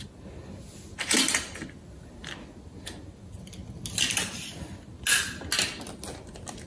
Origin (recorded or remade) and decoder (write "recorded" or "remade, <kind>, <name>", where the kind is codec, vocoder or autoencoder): recorded